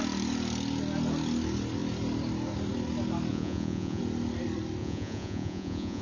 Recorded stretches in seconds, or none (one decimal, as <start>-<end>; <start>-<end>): 0.0-3.3; 4.0-4.8